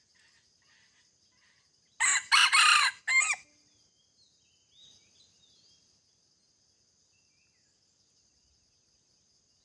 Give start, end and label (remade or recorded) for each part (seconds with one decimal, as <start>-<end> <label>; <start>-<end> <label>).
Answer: 0.0-9.6 recorded